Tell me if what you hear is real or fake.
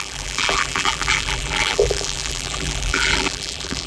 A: fake